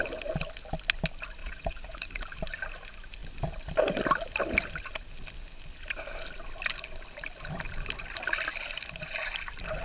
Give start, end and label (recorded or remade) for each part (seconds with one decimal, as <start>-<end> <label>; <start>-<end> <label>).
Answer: 0.0-1.4 recorded; 1.4-2.1 remade; 2.1-9.8 recorded